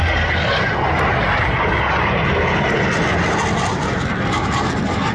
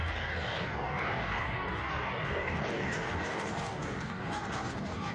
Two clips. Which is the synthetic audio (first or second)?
second